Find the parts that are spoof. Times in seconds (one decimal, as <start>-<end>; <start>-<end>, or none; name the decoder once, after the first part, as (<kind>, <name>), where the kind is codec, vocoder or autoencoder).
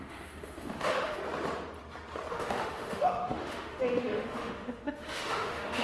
0.0-1.2 (autoencoder, DAC-VAE); 2.3-5.8